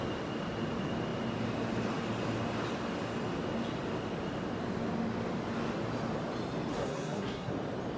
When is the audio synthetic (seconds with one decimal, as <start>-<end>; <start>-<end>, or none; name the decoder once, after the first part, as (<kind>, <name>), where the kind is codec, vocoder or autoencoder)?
6.7-7.5 (codec, SNAC)

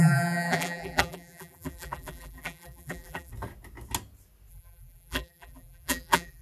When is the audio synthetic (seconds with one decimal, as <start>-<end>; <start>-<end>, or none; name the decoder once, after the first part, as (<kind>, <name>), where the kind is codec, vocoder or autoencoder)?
0.0-3.3 (vocoder, BigVGAN v2); 4.5-6.4

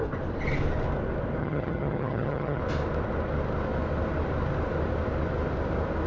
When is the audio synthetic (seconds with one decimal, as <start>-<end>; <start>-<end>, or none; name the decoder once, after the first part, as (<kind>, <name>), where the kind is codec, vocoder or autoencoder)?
1.4-2.6 (vocoder, HiFi-GAN)

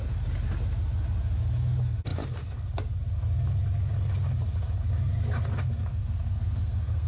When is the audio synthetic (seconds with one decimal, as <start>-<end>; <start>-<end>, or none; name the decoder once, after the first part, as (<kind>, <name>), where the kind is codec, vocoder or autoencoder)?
5.9-7.1 (codec, SNAC)

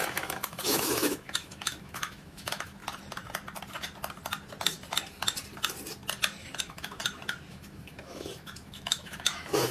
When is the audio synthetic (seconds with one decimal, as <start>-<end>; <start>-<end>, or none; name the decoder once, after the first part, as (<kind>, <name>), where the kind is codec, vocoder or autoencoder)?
0.0-2.8 (autoencoder, DAC-VAE); 6.6-7.0; 7.5-9.7

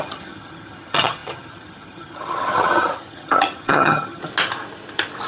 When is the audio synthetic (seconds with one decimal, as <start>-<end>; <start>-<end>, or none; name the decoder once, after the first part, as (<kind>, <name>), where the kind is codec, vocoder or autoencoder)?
0.0-4.2 (vocoder, HiFi-GAN)